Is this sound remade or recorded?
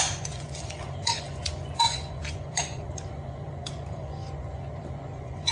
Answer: remade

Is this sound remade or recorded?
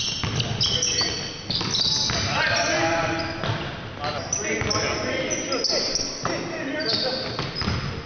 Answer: recorded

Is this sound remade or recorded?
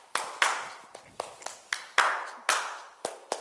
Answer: recorded